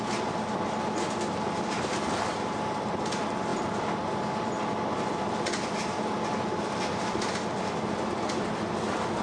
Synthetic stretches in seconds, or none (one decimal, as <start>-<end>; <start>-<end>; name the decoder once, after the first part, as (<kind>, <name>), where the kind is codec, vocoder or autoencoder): 2.3-3.1 (vocoder, BigVGAN v2)